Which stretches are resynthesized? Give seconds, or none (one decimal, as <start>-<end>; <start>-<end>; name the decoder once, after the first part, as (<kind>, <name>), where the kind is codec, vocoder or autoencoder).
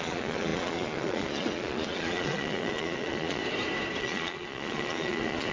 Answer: 0.0-3.4 (vocoder, Vocos); 4.0-5.5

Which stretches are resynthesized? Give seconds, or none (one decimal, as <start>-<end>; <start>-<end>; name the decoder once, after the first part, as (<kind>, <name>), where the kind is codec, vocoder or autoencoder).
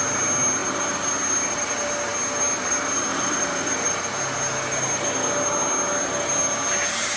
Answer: 3.1-4.0 (vocoder, BigVGAN v2)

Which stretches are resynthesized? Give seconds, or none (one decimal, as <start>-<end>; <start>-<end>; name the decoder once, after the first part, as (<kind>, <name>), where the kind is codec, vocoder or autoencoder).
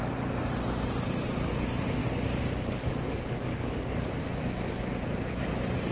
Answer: 2.0-4.2 (codec, DAC)